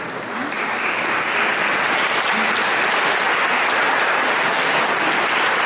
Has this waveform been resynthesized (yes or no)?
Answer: no